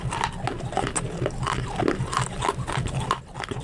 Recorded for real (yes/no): yes